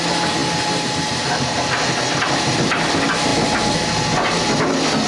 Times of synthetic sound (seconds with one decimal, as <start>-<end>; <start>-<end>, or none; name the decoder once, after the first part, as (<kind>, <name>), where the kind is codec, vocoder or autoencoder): none